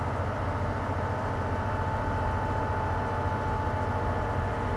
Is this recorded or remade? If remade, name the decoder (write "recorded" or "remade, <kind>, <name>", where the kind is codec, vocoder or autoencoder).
recorded